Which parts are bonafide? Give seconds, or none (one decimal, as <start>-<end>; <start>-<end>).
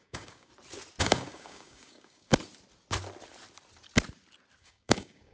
0.5-1.0; 2.3-4.6